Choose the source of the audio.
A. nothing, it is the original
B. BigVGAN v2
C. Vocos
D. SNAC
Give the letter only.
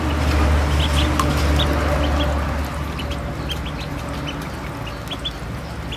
A